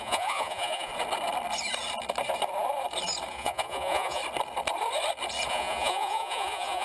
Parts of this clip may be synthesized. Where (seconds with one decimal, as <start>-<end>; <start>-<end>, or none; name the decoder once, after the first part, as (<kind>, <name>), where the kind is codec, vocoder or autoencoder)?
0.0-0.9 (vocoder, Vocos); 3.3-4.2; 5.5-6.8